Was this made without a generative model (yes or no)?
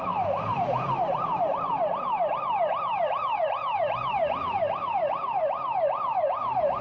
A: no